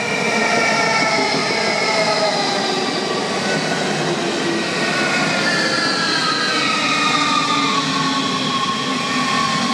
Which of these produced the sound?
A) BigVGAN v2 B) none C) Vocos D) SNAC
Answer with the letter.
B